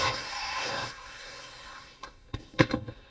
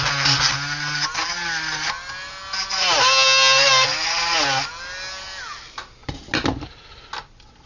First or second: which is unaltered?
second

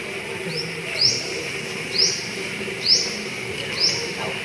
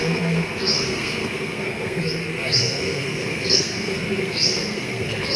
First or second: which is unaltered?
first